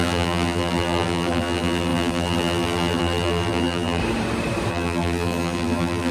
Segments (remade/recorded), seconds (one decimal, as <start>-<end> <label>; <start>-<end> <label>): 0.0-4.0 remade; 4.0-4.7 recorded; 4.7-6.1 remade